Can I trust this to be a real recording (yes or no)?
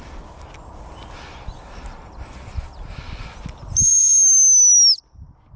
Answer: yes